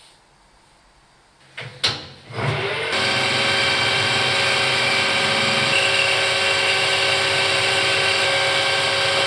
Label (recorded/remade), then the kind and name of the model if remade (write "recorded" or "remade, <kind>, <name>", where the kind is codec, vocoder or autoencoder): recorded